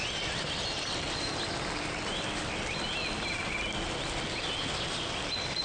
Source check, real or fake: real